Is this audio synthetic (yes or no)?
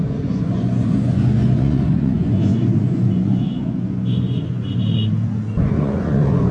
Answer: yes